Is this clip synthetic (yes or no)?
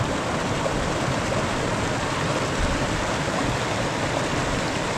no